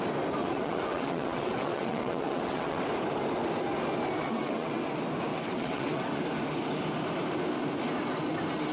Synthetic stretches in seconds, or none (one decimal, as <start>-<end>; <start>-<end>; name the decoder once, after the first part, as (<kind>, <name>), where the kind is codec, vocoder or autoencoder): 0.4-2.8 (vocoder, WaveNeXt); 4.2-4.8; 5.3-6.2